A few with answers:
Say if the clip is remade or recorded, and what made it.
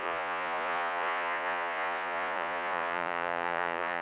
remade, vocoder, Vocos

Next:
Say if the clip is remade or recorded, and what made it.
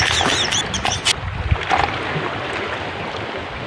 recorded